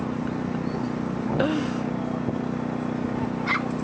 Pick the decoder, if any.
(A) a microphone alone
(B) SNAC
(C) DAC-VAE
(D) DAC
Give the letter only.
A